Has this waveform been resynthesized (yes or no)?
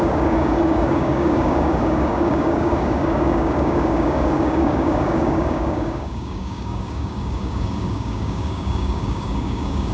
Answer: yes